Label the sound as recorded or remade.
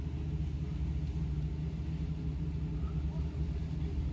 recorded